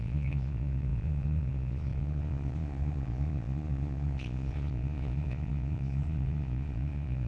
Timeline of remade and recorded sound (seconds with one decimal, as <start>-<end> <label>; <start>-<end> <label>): 0.0-7.3 remade